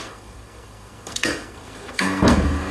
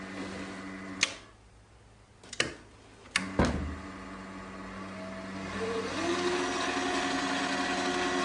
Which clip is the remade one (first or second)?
first